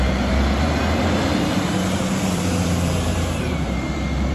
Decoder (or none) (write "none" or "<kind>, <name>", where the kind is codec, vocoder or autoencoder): vocoder, BigVGAN v2